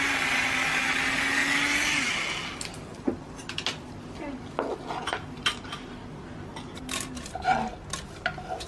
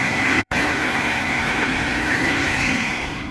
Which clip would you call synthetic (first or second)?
second